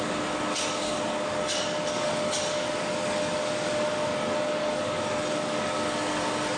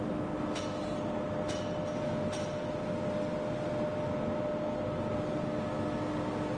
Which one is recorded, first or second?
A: second